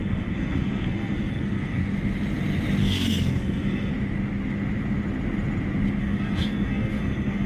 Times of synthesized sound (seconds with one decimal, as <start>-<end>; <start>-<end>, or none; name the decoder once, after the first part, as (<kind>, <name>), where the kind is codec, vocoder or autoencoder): 0.0-1.8 (codec, SNAC); 2.8-3.9; 6.0-7.5